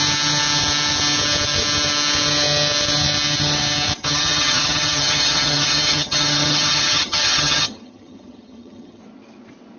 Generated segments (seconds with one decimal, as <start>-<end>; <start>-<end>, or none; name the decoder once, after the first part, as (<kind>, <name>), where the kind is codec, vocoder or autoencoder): 4.0-9.0 (vocoder, HiFi-GAN)